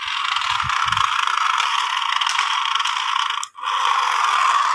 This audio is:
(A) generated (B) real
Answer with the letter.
B